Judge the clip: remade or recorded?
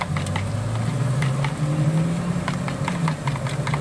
recorded